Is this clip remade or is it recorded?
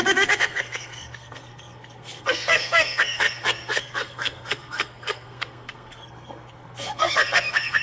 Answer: remade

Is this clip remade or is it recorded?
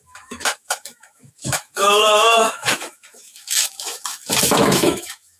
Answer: remade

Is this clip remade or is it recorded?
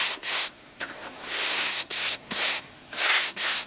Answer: remade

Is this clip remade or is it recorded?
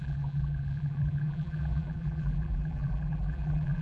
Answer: remade